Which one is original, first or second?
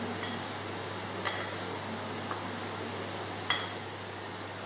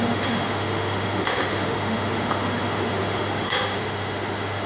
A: first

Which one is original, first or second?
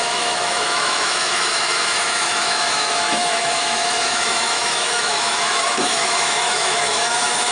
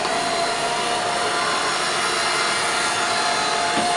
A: second